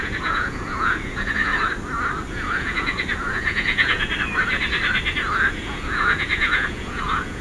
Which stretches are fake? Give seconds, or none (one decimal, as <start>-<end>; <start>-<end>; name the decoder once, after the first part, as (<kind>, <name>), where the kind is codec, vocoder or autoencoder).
0.0-1.5 (vocoder, Vocos); 2.3-4.1; 5.5-7.4